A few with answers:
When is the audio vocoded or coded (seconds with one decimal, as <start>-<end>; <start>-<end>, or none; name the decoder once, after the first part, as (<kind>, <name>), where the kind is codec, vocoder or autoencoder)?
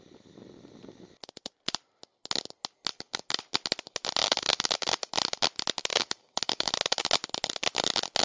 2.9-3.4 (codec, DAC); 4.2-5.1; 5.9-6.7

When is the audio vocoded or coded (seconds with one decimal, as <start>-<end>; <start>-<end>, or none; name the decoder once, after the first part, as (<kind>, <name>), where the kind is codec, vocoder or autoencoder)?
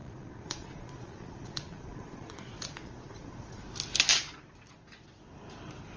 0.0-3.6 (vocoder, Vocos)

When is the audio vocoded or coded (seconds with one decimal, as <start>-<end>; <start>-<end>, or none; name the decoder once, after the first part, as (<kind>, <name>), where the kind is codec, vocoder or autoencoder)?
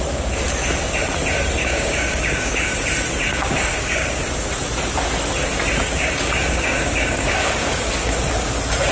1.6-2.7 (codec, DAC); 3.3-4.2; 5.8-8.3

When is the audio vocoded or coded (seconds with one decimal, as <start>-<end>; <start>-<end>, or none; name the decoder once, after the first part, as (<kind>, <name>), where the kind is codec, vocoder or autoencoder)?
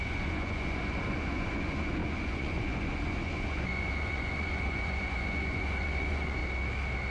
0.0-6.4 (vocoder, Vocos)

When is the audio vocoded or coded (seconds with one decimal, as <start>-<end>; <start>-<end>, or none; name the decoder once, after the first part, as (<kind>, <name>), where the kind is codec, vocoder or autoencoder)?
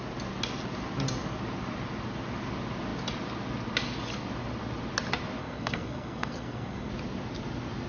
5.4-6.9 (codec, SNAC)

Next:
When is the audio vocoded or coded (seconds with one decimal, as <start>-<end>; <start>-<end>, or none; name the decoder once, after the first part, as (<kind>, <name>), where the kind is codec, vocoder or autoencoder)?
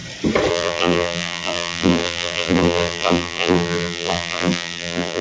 0.5-5.2 (vocoder, BigVGAN v2)